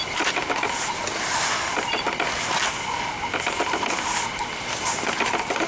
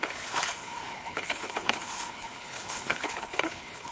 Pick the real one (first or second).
first